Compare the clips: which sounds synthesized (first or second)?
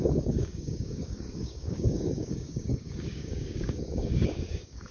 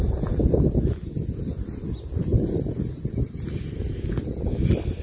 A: first